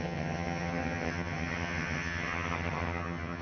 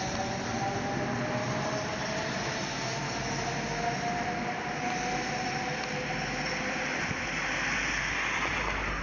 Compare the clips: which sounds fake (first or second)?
first